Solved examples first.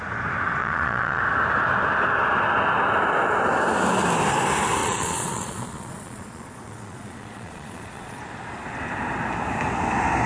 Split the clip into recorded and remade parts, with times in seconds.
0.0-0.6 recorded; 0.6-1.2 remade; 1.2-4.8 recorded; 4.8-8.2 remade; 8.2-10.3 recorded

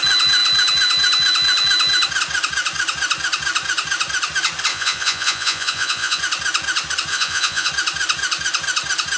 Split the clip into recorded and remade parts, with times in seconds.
0.0-4.7 recorded; 4.7-6.2 remade; 6.2-7.1 recorded; 7.1-7.7 remade; 7.7-9.2 recorded

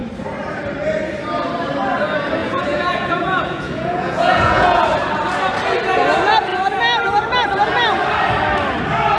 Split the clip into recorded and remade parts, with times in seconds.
0.0-2.4 recorded; 2.4-4.8 remade; 4.8-9.2 recorded

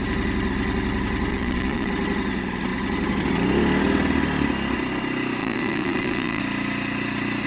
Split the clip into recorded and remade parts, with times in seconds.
0.0-1.3 recorded; 1.3-1.9 remade; 1.9-5.4 recorded; 5.4-6.4 remade; 6.4-7.5 recorded

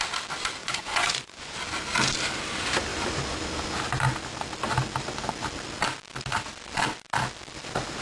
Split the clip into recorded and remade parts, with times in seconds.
0.0-0.6 recorded; 0.6-1.6 remade; 1.6-8.0 recorded

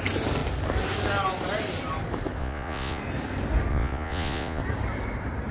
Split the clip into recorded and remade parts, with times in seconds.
0.0-2.4 recorded; 2.4-3.0 remade; 3.0-3.7 recorded; 3.7-4.6 remade; 4.6-5.5 recorded